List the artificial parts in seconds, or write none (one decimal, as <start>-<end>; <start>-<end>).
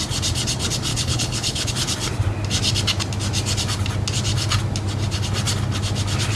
0.9-1.7